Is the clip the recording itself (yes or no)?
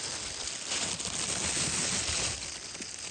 yes